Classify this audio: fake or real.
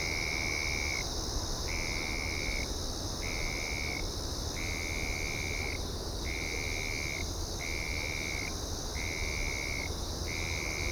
real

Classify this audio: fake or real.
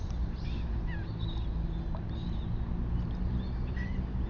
real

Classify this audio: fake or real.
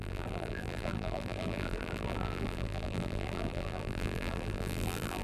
fake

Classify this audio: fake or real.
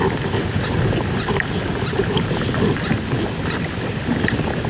real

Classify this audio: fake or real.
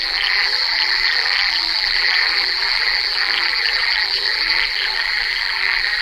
fake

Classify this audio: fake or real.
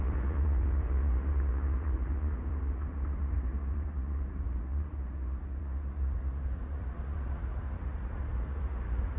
fake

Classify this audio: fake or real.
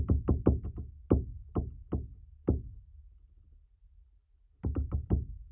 real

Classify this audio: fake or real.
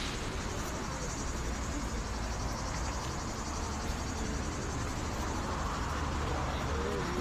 real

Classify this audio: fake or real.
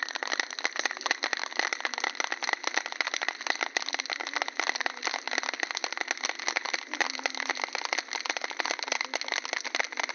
real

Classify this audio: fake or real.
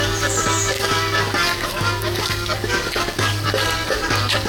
fake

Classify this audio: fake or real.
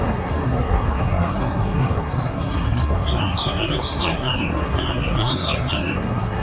fake